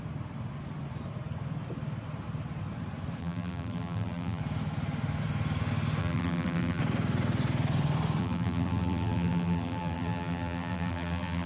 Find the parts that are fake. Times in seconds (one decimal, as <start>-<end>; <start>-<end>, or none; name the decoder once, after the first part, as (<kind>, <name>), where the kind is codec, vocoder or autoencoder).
3.2-4.4 (vocoder, BigVGAN v2); 6.0-6.8; 8.2-11.5